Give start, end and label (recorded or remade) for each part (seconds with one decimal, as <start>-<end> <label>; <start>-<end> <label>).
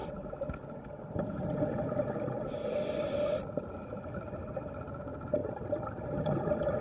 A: 0.0-4.1 recorded; 4.1-6.8 remade